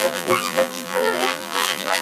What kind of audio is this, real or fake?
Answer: fake